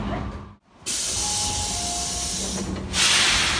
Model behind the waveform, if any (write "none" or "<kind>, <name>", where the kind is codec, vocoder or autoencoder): none